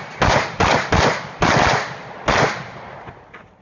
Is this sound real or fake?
real